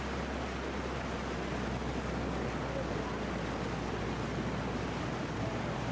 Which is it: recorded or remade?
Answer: recorded